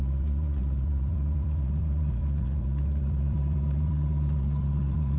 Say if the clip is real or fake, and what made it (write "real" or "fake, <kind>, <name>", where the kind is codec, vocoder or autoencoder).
fake, vocoder, Vocos